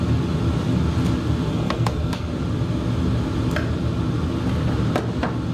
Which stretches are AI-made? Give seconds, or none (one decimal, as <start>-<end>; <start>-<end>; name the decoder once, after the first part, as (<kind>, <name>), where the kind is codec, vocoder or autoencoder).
1.5-2.3 (codec, SNAC)